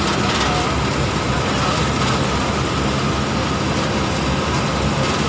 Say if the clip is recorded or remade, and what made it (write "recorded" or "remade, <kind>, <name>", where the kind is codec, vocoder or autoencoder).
recorded